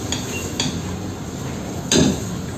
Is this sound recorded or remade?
recorded